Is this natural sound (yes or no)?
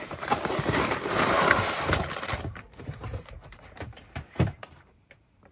no